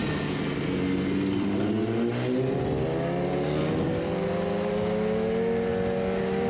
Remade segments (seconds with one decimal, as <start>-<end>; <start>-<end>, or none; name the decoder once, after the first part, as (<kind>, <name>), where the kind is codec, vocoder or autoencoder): none